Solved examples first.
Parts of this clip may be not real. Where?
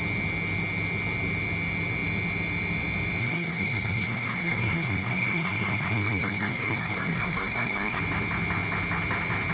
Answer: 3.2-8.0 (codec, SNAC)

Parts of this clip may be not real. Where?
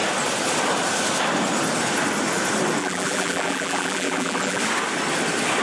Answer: 2.8-4.6 (vocoder, BigVGAN v2)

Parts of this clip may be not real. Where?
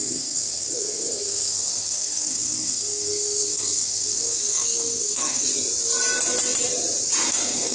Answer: 0.0-5.5 (codec, SNAC); 7.3-7.7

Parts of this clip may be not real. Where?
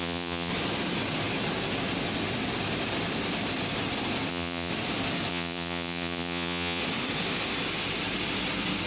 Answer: 0.0-0.5 (vocoder, Vocos); 4.3-4.7; 5.3-6.8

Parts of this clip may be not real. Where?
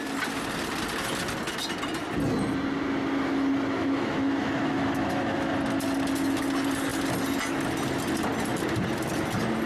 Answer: 3.8-5.5 (autoencoder, DAC-VAE)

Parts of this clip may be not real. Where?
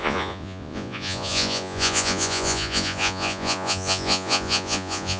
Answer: 0.0-5.2 (vocoder, Vocos)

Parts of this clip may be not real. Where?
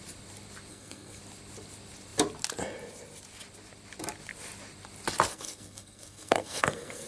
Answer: 0.7-1.2 (codec, SNAC); 5.3-7.1